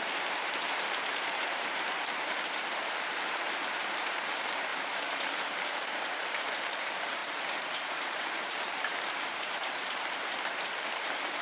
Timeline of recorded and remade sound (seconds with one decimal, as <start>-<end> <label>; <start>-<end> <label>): 0.0-11.4 remade